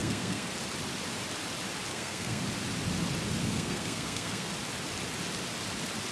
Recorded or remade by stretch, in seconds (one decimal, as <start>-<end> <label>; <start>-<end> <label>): 0.0-0.5 remade; 0.5-1.9 recorded; 1.9-2.4 remade; 2.4-3.4 recorded; 3.4-4.5 remade; 4.5-6.1 recorded